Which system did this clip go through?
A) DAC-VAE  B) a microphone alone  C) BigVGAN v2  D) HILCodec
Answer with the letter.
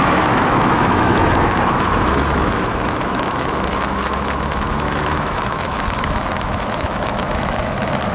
A